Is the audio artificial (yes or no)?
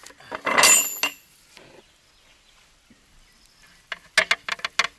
no